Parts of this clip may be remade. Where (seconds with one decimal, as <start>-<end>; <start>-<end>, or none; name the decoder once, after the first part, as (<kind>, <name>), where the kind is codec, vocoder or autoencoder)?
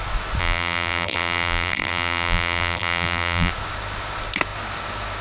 0.4-3.5 (vocoder, BigVGAN v2)